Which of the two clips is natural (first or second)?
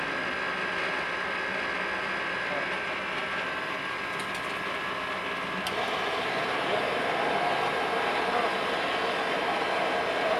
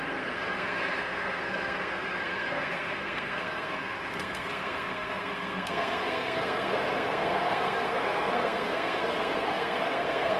first